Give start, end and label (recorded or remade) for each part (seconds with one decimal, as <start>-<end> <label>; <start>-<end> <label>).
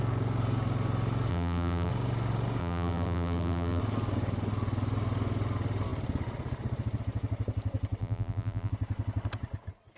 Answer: 0.0-1.3 recorded; 1.3-1.9 remade; 1.9-2.6 recorded; 2.6-3.8 remade; 3.8-8.0 recorded; 8.0-8.7 remade; 8.7-10.0 recorded